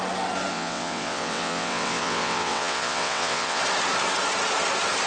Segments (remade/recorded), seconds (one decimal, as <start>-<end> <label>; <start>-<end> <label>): 0.0-0.5 recorded; 0.5-3.6 remade; 3.6-5.1 recorded

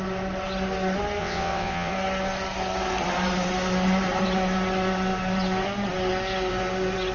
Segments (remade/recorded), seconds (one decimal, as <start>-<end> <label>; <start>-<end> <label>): 0.0-1.2 recorded; 1.2-1.9 remade; 1.9-7.1 recorded

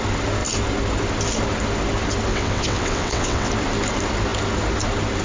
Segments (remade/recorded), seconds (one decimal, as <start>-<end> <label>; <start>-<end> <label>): 0.0-2.3 recorded; 2.3-3.5 remade; 3.5-5.2 recorded

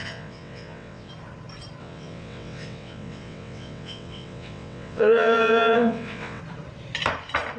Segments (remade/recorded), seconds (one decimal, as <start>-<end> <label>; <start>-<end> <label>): 0.0-1.1 remade; 1.1-1.8 recorded; 1.8-6.4 remade; 6.4-7.6 recorded